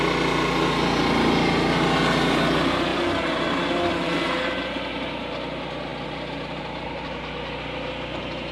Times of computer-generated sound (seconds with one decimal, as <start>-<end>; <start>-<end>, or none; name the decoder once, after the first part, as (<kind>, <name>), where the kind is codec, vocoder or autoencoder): none